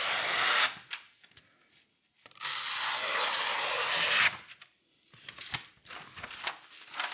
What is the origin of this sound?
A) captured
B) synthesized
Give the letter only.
A